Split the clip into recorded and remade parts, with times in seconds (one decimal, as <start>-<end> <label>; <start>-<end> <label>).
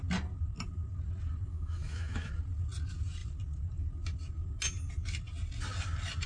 0.0-1.5 recorded; 1.5-2.3 remade; 2.3-6.3 recorded